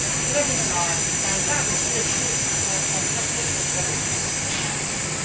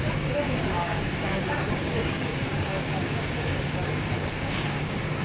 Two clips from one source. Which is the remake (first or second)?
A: second